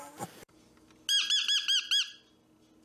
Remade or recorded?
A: recorded